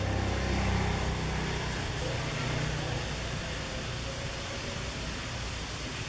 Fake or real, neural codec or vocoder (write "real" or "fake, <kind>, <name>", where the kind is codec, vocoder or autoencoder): real